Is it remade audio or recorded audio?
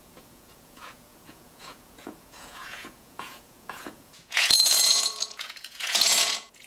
remade